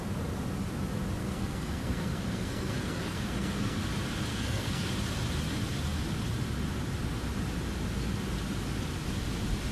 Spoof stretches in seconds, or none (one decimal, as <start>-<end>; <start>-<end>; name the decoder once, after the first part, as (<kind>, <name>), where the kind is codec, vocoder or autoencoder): 1.2-3.8 (codec, SNAC); 4.3-4.9